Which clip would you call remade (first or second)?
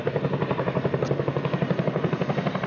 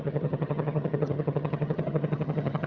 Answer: second